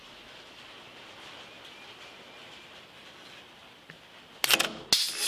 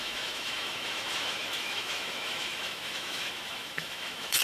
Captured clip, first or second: first